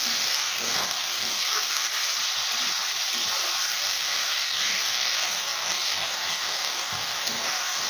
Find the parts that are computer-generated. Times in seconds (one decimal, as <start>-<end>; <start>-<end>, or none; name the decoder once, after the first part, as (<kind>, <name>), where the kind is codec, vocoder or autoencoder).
0.0-1.9 (codec, DAC); 3.7-7.9